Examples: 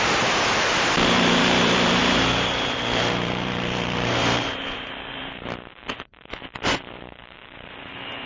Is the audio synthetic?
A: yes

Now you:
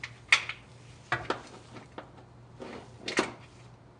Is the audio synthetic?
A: no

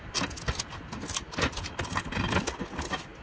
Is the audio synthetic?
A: no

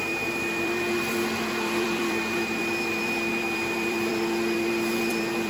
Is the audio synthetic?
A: yes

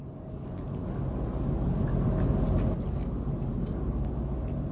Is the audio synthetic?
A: no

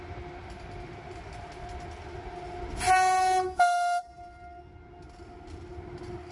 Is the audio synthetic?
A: no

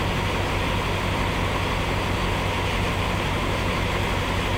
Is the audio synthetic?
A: no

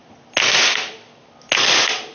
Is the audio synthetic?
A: no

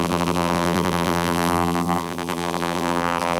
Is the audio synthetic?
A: yes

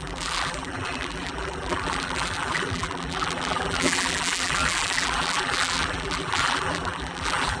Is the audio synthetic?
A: yes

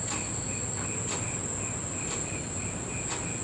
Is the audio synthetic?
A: no